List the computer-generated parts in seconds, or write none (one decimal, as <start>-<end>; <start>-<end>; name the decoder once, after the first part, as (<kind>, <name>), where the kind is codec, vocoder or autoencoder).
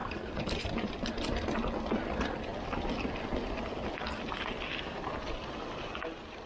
0.0-0.9 (vocoder, BigVGAN v2)